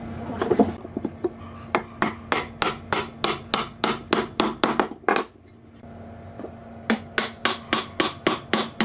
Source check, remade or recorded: recorded